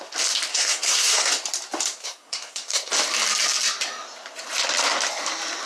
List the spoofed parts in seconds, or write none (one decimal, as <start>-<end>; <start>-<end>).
0.5-1.3; 2.0-2.9